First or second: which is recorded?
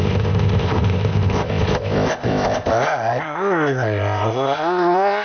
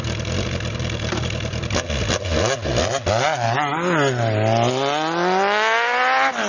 second